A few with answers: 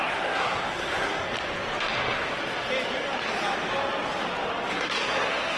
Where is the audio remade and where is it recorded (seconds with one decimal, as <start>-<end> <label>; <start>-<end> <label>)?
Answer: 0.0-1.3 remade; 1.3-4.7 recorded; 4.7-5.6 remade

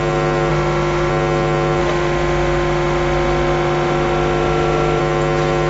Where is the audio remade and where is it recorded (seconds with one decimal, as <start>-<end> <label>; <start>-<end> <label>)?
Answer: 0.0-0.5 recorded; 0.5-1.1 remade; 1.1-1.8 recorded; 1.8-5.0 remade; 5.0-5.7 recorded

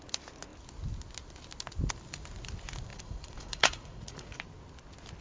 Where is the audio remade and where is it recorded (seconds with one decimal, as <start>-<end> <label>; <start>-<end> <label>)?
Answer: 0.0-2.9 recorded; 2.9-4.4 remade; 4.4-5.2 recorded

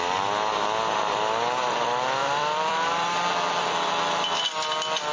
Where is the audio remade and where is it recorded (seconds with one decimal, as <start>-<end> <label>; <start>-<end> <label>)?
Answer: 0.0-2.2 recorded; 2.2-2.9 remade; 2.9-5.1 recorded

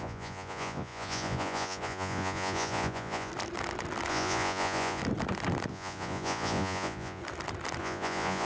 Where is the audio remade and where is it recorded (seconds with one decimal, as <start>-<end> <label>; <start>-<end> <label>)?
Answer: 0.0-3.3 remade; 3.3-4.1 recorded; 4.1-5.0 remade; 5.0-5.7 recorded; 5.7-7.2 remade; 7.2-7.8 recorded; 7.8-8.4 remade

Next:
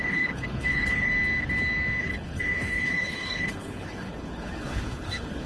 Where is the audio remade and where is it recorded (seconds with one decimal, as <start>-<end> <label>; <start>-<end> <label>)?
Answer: 0.0-1.1 remade; 1.1-2.0 recorded; 2.0-5.5 remade

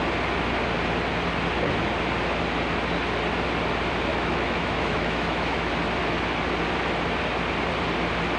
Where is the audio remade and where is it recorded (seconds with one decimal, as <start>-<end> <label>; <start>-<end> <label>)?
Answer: 0.0-4.1 recorded; 4.1-5.7 remade; 5.7-8.4 recorded

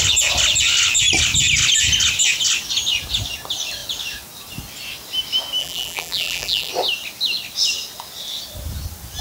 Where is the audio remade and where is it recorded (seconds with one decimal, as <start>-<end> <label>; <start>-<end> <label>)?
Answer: 0.0-5.6 recorded; 5.6-6.7 remade; 6.7-9.2 recorded